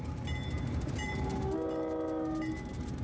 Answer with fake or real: real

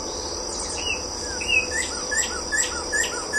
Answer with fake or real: real